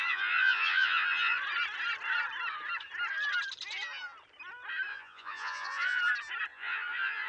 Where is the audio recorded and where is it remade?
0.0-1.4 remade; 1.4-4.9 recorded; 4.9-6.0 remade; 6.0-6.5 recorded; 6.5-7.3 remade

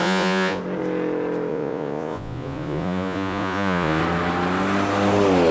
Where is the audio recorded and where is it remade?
0.0-0.6 remade; 0.6-1.5 recorded; 1.5-4.0 remade; 4.0-5.5 recorded

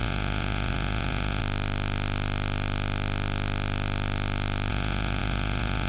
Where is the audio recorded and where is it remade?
0.0-1.4 remade; 1.4-4.7 recorded; 4.7-5.9 remade